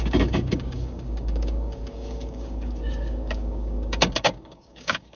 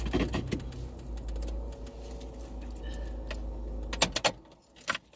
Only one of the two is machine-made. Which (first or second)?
first